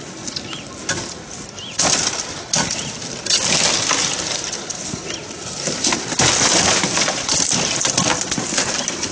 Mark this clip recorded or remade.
recorded